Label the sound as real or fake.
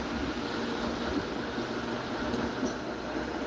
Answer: real